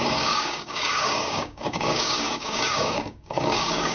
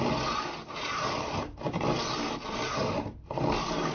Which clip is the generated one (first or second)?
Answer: first